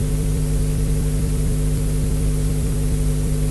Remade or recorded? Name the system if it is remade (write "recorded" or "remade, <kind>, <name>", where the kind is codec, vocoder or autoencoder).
remade, vocoder, BigVGAN v2